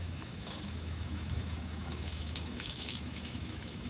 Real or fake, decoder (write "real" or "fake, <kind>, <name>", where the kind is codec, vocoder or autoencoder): fake, autoencoder, DAC-VAE